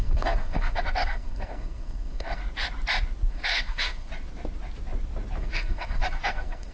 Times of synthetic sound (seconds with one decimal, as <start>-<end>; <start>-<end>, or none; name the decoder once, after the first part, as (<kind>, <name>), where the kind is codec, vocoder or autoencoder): 0.0-2.4 (codec, SNAC); 3.3-4.1; 5.4-6.7